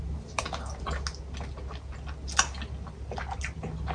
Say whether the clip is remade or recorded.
recorded